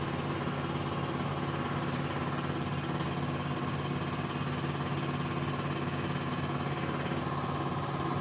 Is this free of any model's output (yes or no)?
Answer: yes